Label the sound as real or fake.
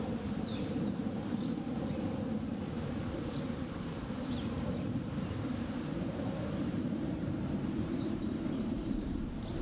fake